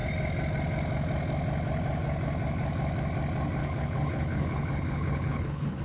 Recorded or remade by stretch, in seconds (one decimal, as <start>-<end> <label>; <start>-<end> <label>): 0.0-3.6 recorded; 3.6-5.8 remade